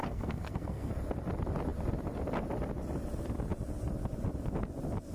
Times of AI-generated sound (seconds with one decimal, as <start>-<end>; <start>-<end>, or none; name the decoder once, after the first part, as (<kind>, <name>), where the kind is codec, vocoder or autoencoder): 0.0-0.9 (codec, SNAC)